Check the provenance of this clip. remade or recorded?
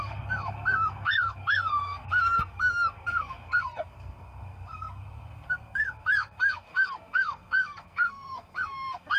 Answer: remade